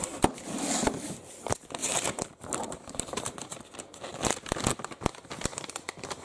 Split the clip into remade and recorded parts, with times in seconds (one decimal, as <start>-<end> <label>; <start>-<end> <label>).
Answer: 0.0-1.8 recorded; 1.8-3.6 remade; 3.6-6.2 recorded